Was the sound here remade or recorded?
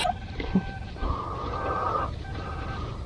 remade